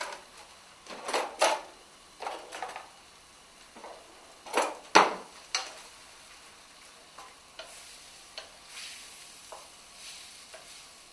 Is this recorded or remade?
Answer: recorded